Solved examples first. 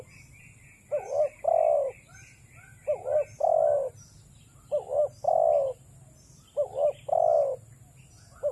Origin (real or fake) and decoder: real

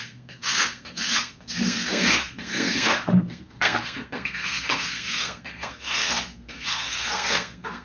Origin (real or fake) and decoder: fake, codec, SNAC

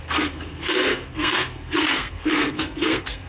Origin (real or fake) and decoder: fake, codec, SNAC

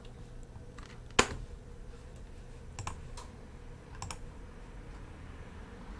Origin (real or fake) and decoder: real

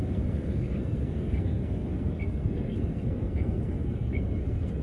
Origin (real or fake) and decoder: fake, codec, SNAC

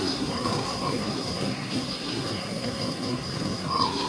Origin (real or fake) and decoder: fake, codec, SNAC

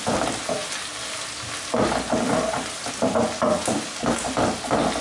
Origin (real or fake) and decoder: real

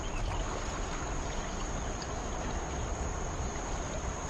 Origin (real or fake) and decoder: real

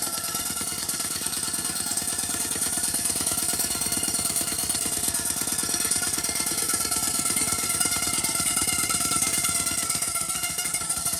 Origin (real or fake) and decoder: fake, codec, SNAC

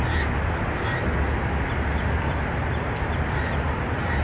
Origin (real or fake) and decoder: real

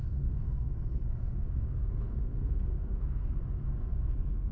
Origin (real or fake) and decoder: fake, codec, SNAC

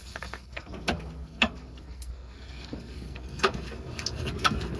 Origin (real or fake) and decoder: fake, codec, SNAC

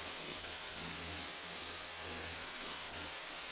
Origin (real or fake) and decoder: fake, codec, SNAC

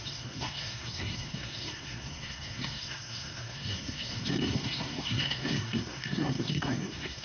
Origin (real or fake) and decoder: fake, codec, SNAC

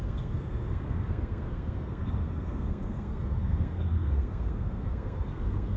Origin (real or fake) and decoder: fake, codec, SNAC